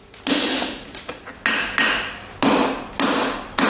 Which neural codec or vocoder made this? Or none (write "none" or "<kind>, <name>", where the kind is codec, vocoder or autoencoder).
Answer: none